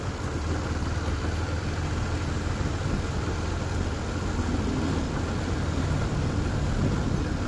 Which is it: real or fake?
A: real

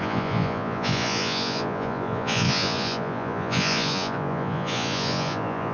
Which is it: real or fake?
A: fake